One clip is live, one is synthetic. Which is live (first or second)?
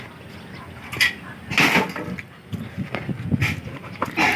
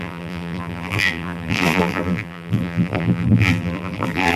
first